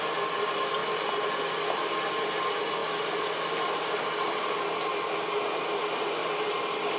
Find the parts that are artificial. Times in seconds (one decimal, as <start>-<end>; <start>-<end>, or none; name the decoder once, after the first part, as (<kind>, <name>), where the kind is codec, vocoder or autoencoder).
none